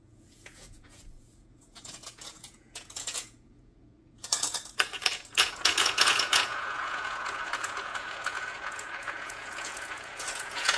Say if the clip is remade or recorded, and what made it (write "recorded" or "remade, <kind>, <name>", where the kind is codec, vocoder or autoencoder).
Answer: remade, vocoder, Vocos